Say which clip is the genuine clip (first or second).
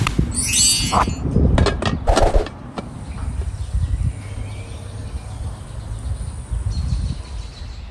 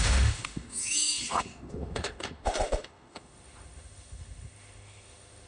first